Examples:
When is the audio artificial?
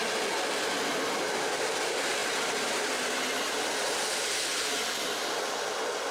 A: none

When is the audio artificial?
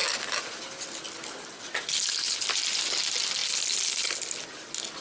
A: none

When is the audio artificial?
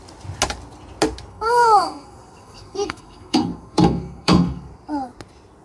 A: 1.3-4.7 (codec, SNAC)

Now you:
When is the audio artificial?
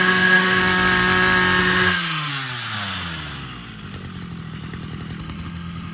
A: 0.0-0.6 (autoencoder, DAC-VAE); 1.6-2.3; 5.2-5.9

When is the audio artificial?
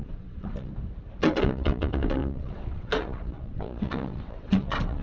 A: 0.0-0.7 (vocoder, WaveNeXt); 1.2-5.0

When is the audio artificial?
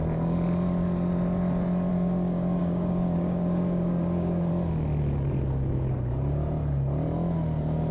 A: 1.9-4.5 (codec, DAC)